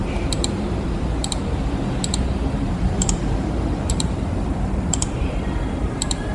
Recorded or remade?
remade